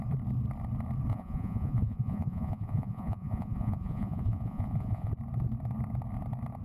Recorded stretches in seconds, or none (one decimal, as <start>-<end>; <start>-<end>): 0.0-1.1; 5.1-6.6